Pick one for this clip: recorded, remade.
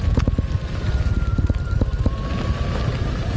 recorded